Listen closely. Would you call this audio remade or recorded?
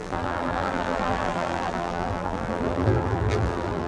remade